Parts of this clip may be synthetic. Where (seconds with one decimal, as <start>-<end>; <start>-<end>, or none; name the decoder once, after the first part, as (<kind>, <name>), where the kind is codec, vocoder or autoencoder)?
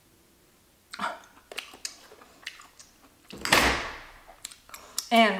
none